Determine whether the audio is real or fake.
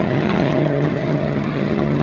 fake